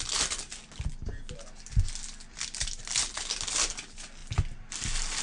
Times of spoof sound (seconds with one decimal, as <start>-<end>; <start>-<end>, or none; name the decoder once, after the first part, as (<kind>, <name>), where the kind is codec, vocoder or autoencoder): none